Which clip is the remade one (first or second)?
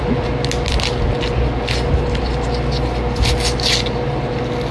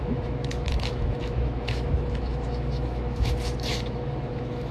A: second